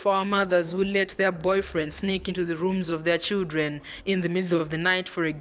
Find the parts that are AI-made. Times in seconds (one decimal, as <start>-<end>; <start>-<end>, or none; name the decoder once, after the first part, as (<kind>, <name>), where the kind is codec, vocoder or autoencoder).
0.0-2.9 (codec, HILCodec); 4.0-4.6

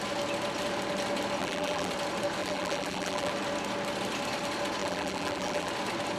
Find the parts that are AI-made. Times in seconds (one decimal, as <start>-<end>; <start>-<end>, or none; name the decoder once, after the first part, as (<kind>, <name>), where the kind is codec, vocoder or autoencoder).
1.4-1.9 (vocoder, BigVGAN v2); 2.4-3.3; 4.8-5.7

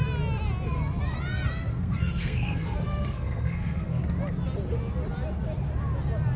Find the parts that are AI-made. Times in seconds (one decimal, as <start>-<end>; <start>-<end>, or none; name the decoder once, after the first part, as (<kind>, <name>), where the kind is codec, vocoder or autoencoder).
1.7-4.0 (codec, SNAC)

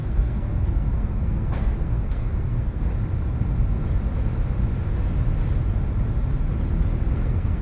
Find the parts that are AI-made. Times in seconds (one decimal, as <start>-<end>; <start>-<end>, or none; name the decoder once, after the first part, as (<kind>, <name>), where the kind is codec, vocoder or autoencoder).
0.0-2.9 (codec, SNAC); 7.1-7.6

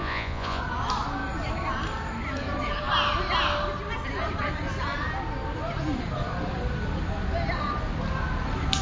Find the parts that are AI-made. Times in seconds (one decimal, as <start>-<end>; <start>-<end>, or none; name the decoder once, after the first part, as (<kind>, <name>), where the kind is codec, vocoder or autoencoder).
0.0-0.6 (vocoder, Vocos)

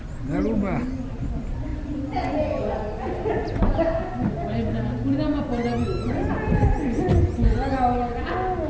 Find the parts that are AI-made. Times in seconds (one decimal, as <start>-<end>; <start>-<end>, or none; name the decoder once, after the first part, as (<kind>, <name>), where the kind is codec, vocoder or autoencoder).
none